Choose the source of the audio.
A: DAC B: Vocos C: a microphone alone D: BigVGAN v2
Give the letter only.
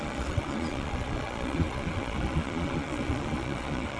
B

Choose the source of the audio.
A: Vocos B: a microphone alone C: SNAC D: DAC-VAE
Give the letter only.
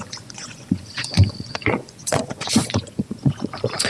A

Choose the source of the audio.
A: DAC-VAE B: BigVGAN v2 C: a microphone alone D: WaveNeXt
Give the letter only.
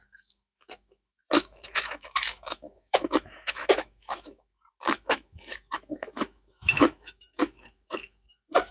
A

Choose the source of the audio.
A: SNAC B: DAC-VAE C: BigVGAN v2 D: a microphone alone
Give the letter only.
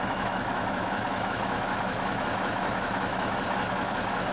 B